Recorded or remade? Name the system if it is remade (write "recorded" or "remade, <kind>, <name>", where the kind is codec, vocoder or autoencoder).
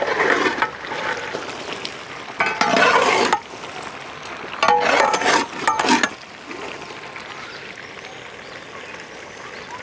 recorded